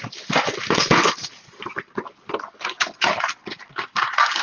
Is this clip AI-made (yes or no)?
no